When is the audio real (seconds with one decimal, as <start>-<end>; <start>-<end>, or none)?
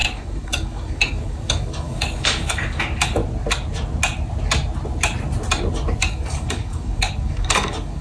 3.2-6.0